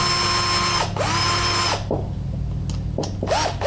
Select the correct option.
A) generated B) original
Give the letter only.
B